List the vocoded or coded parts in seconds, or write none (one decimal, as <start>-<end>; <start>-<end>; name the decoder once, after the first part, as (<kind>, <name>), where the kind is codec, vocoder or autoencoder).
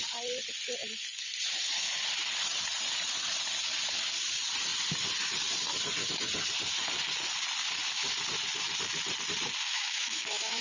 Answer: 9.6-10.6 (autoencoder, DAC-VAE)